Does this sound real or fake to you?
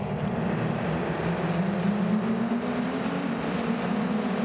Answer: real